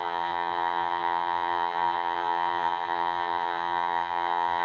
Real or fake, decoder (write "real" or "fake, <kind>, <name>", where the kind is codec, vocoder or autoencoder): fake, vocoder, HiFi-GAN